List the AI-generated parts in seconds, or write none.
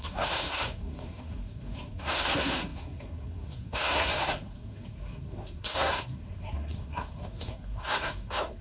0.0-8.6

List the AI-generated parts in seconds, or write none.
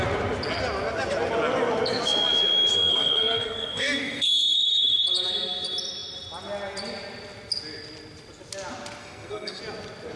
2.7-5.0; 9.0-9.6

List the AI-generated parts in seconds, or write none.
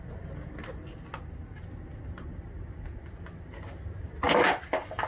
none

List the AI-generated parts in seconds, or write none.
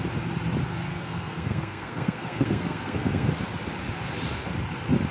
0.9-3.3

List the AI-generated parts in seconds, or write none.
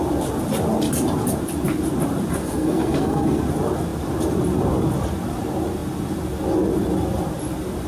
2.4-3.4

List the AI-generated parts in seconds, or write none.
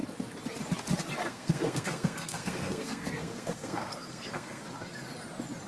1.2-4.6